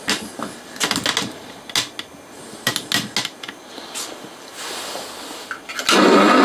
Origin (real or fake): real